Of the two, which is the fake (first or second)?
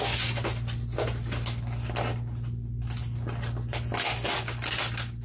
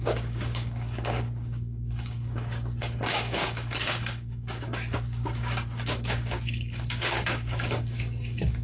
second